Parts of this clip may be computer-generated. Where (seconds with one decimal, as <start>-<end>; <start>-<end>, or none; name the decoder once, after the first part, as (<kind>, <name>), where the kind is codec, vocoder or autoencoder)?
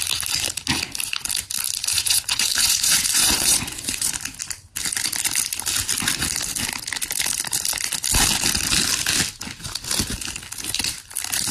1.8-4.1 (vocoder, Vocos)